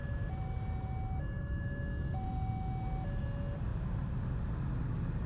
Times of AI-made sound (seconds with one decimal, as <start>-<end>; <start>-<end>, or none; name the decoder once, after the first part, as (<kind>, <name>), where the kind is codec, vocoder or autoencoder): none